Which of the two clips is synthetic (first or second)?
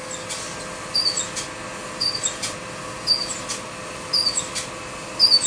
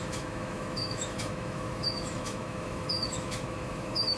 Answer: second